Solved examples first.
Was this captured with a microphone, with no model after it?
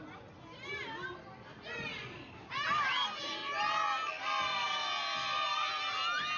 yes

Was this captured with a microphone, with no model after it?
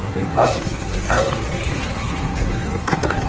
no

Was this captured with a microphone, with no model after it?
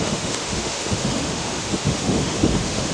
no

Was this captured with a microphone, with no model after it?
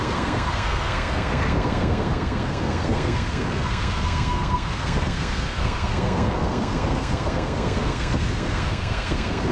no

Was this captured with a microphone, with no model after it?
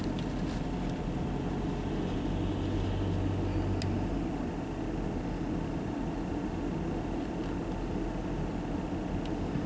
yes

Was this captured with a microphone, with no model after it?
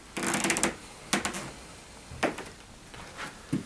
yes